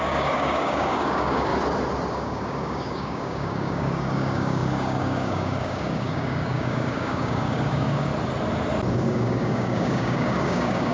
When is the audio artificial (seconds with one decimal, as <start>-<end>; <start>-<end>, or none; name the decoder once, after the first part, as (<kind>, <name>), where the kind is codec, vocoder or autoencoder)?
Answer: 0.0-1.5 (codec, DAC); 2.1-8.1; 8.9-10.9